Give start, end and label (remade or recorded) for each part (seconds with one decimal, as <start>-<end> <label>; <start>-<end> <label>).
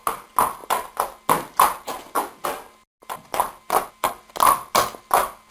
0.0-5.5 recorded